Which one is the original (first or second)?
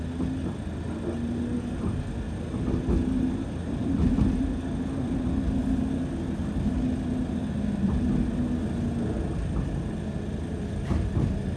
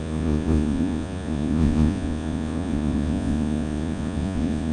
first